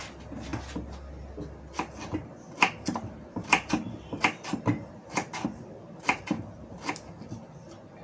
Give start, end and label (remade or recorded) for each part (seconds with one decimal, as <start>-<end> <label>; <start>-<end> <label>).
0.0-2.1 recorded; 2.1-6.9 remade; 6.9-8.0 recorded